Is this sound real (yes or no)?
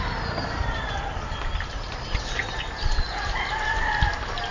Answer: yes